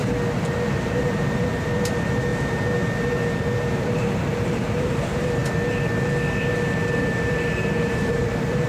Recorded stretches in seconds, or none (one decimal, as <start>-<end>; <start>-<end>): 0.0-0.7; 2.3-3.7; 5.4-7.0